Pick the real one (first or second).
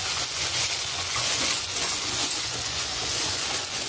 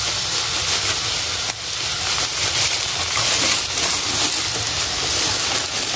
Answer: second